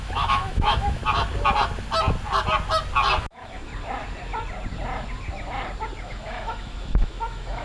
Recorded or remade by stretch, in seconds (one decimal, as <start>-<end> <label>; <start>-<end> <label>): 0.0-1.0 remade; 1.0-3.2 recorded; 3.2-3.7 remade; 3.7-6.0 recorded; 6.0-7.6 remade